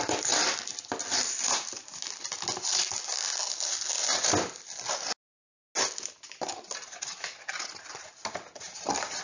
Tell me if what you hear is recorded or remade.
recorded